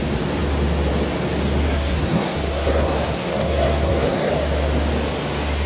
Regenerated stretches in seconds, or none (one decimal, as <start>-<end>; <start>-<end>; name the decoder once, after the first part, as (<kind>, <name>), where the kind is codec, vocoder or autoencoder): 1.6-4.3 (codec, SNAC)